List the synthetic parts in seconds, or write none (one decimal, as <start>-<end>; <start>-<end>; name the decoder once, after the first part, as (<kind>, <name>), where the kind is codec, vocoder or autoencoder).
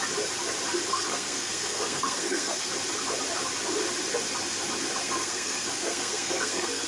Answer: 0.9-2.7 (codec, SNAC); 5.0-6.9